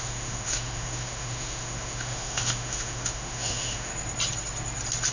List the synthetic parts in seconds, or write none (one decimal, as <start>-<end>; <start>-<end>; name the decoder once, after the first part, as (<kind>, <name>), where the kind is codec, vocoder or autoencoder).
0.0-3.9 (autoencoder, DAC-VAE)